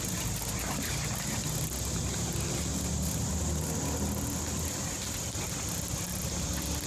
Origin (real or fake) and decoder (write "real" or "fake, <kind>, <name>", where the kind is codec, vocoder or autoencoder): real